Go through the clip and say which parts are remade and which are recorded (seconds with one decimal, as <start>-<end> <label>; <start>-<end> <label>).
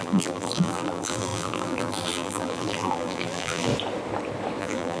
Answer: 0.0-3.7 remade; 3.7-4.6 recorded; 4.6-5.0 remade